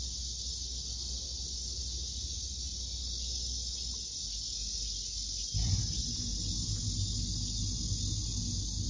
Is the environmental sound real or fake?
real